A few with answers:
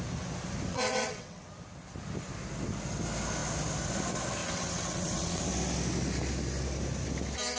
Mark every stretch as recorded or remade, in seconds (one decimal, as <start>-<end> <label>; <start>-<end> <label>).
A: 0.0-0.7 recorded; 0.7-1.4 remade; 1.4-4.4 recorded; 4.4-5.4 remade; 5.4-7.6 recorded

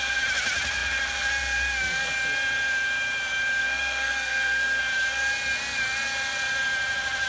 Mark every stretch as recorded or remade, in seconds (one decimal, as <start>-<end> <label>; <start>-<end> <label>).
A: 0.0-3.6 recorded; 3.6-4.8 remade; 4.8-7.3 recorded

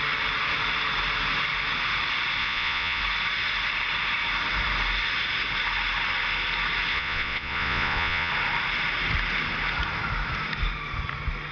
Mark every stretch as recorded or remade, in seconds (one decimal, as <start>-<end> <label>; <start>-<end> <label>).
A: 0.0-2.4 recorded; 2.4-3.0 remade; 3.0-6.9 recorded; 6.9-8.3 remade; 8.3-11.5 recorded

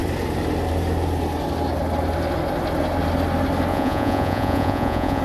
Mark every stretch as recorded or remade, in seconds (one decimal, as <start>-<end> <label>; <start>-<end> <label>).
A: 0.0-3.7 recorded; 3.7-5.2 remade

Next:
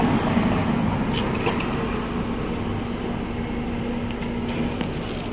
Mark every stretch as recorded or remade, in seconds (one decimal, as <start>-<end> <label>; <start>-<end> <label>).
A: 0.0-5.3 recorded

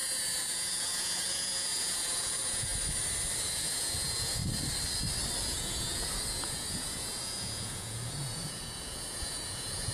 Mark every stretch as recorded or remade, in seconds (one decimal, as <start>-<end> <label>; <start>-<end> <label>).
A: 0.0-2.7 remade; 2.7-3.4 recorded; 3.4-4.4 remade; 4.4-5.4 recorded; 5.4-9.9 remade